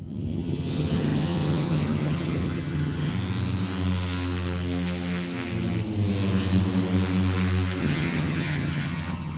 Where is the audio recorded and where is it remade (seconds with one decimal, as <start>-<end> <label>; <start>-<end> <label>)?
0.0-3.1 remade; 3.1-7.8 recorded; 7.8-9.4 remade